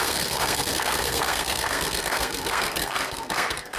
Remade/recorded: remade